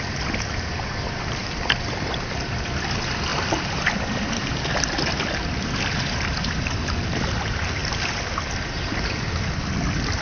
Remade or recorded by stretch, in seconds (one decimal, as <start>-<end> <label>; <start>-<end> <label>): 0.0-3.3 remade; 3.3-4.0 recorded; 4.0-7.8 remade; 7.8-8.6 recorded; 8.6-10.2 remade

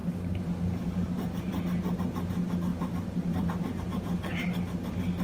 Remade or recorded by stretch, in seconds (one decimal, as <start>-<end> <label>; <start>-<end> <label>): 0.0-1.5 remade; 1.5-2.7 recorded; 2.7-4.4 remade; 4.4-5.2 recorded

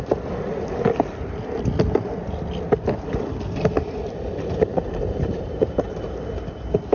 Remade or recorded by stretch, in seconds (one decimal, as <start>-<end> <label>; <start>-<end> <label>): 0.0-4.7 recorded; 4.7-6.2 remade; 6.2-6.9 recorded

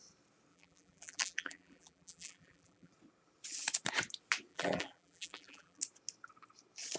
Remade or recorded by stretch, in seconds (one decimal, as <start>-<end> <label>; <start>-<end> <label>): 0.0-0.5 recorded; 0.5-2.9 remade; 2.9-4.5 recorded; 4.5-5.8 remade; 5.8-7.0 recorded